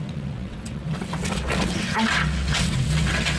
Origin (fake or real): fake